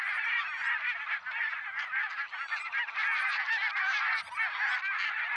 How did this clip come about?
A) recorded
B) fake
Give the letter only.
A